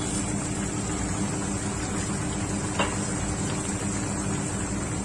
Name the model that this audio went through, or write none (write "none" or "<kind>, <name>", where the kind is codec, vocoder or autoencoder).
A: none